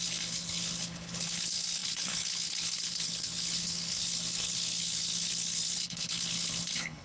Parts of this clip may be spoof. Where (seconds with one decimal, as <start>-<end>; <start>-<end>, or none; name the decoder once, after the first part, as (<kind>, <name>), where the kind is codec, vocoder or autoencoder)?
0.0-7.0 (codec, HILCodec)